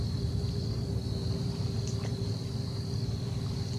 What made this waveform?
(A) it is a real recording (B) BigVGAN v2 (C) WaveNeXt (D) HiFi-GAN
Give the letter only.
B